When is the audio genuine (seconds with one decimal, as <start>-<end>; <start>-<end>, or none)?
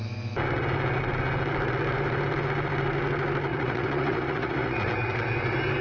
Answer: 0.0-3.5; 4.9-5.8